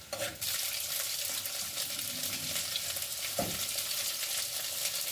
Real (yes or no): yes